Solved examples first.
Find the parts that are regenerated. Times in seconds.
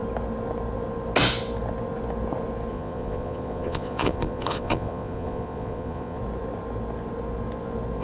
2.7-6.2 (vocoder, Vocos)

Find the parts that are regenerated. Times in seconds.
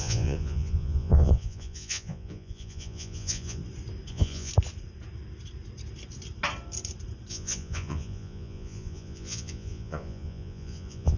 0.0-3.6 (vocoder, Vocos); 4.1-4.5; 7.3-11.2